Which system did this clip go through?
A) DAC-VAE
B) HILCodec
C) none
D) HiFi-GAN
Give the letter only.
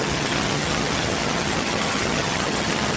D